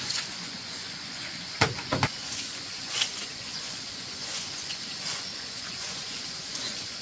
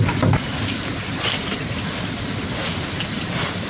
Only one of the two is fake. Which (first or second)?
first